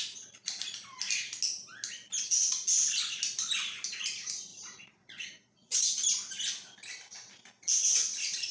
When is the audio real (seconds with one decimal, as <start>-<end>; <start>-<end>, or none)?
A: 0.0-4.5; 5.8-8.5